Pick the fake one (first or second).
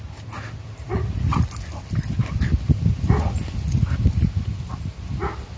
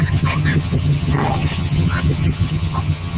second